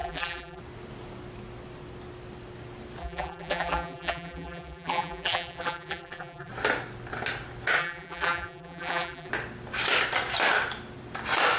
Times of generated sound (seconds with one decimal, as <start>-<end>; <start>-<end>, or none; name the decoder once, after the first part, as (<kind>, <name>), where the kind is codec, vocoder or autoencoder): 0.0-0.6 (vocoder, BigVGAN v2); 3.0-6.5; 7.8-9.3